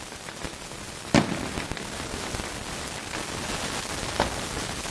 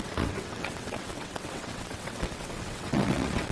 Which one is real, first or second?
first